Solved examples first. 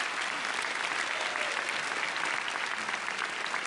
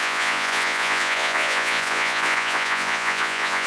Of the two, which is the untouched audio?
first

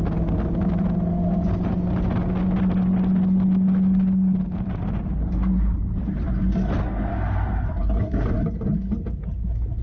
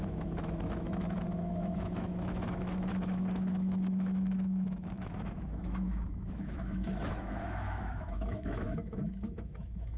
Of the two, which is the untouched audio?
first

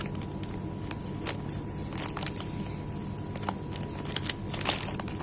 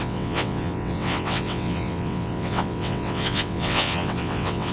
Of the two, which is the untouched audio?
first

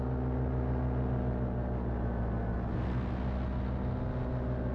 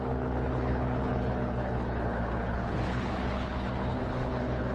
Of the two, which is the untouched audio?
first